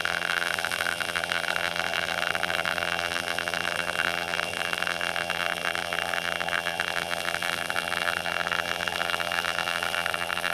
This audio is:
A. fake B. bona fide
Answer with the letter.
A